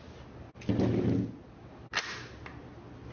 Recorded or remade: recorded